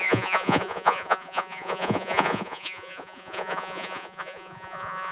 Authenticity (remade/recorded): remade